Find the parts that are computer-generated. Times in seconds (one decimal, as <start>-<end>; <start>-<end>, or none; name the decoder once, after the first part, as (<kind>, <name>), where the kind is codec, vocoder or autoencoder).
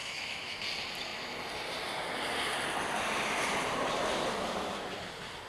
0.0-0.6 (autoencoder, DAC-VAE)